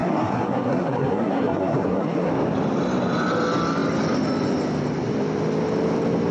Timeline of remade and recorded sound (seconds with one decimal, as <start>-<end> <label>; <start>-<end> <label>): 0.0-2.3 remade; 2.3-6.3 recorded